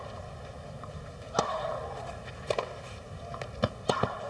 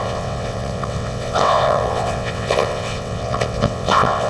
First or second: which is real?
first